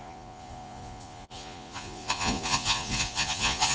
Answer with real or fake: fake